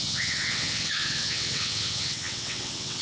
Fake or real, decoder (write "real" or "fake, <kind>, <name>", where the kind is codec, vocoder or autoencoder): fake, vocoder, WaveNeXt